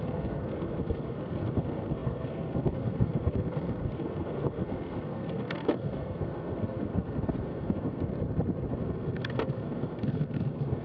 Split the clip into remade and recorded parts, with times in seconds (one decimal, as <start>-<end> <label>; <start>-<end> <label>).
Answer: 0.0-8.1 remade; 8.1-8.7 recorded; 8.7-10.8 remade